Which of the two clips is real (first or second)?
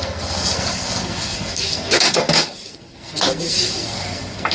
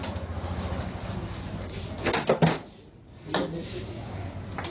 second